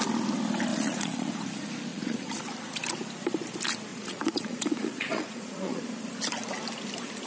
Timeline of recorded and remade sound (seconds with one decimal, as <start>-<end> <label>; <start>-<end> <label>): 0.0-0.7 recorded; 0.7-1.3 remade; 1.3-1.9 recorded; 1.9-2.4 remade; 2.4-3.9 recorded; 3.9-5.8 remade; 5.8-7.3 recorded